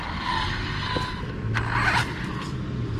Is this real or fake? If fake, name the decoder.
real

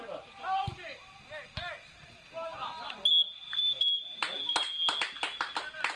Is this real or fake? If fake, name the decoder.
real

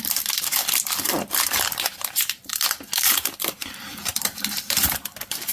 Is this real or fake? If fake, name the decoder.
fake, vocoder, BigVGAN v2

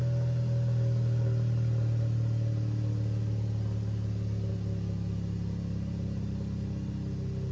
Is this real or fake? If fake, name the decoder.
real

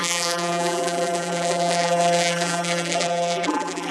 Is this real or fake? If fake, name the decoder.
fake, vocoder, BigVGAN v2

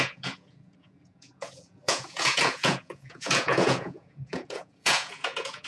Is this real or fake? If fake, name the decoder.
fake, vocoder, Vocos